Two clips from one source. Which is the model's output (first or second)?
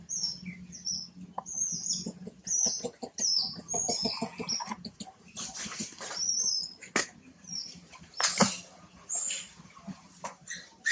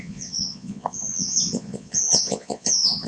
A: second